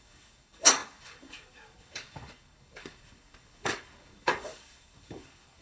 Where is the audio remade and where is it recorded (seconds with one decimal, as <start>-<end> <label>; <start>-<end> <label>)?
0.0-5.6 remade